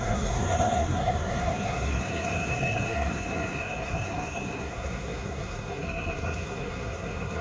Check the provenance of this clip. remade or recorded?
remade